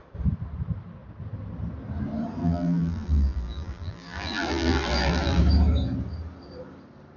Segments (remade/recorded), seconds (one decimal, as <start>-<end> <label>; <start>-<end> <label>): 0.0-2.4 recorded; 2.4-5.4 remade; 5.4-7.2 recorded